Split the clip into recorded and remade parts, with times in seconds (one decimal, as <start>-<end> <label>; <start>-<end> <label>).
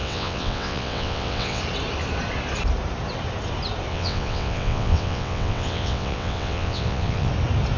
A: 0.0-1.6 remade; 1.6-3.9 recorded; 3.9-7.3 remade; 7.3-7.8 recorded